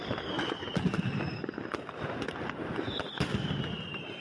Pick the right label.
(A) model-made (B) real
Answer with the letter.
B